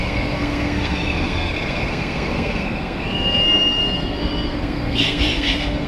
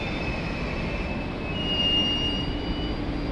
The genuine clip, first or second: second